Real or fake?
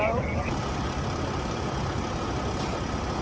real